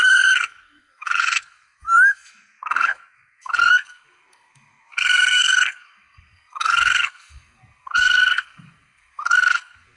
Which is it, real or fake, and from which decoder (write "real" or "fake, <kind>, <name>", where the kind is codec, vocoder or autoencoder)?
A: fake, codec, SNAC